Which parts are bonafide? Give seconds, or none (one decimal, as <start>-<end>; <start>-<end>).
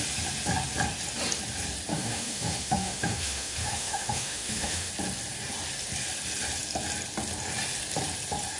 0.0-1.9; 4.9-8.6